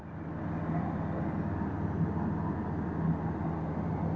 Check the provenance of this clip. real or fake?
real